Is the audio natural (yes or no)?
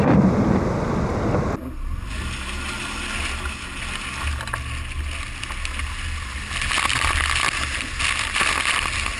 yes